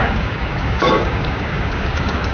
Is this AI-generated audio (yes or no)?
yes